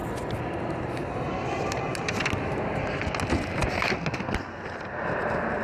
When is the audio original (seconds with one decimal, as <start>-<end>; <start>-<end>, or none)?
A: 0.0-5.6